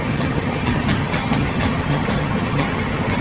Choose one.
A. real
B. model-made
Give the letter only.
B